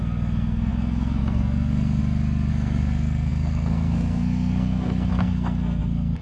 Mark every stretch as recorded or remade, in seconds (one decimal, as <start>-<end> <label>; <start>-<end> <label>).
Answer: 0.0-2.0 remade; 2.0-2.5 recorded; 2.5-6.2 remade

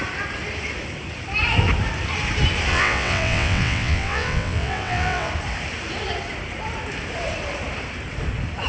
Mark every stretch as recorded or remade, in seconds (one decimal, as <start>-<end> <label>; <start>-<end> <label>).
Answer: 0.0-2.7 recorded; 2.7-5.3 remade; 5.3-8.7 recorded

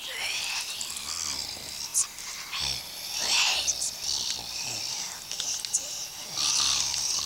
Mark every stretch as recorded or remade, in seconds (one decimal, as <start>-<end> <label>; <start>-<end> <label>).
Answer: 0.0-7.3 recorded

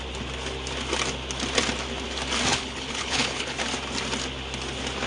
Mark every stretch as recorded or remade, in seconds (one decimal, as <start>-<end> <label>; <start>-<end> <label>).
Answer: 0.0-2.5 recorded; 2.5-3.6 remade; 3.6-5.1 recorded

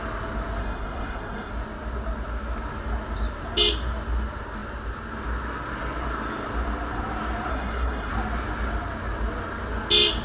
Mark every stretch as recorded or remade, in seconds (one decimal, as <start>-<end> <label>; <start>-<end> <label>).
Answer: 0.0-0.6 recorded; 0.6-1.5 remade; 1.5-7.5 recorded; 7.5-8.1 remade; 8.1-10.2 recorded